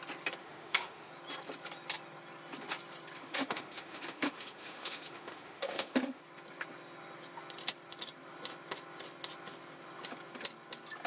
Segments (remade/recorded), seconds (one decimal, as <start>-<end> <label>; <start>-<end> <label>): 0.0-0.4 recorded; 0.4-1.1 remade; 1.1-3.2 recorded; 3.2-6.2 remade; 6.2-11.1 recorded